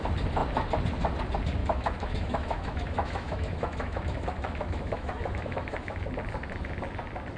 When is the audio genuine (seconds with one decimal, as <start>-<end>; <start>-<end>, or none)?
0.0-1.6; 6.0-7.4